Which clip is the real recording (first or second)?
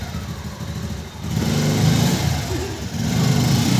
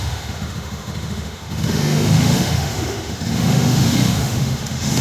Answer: first